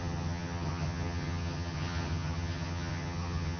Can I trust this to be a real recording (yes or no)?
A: no